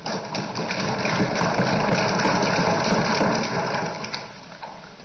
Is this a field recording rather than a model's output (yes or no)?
yes